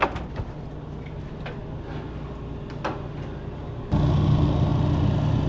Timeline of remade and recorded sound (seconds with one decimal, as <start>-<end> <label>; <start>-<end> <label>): 0.0-5.5 recorded